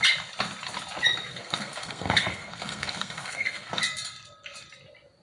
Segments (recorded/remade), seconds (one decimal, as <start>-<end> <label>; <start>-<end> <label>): 0.0-1.3 recorded; 1.3-3.8 remade; 3.8-5.2 recorded